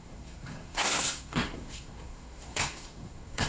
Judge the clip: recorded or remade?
remade